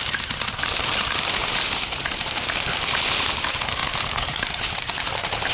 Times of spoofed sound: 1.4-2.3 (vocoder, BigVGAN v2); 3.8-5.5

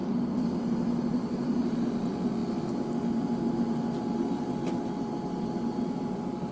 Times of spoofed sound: 0.0-2.4 (vocoder, BigVGAN v2)

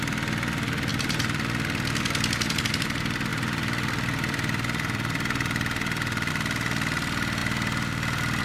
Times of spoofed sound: 3.3-6.3 (vocoder, BigVGAN v2); 7.4-8.4

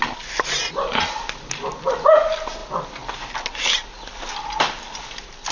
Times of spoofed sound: none